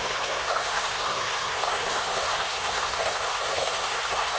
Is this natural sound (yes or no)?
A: no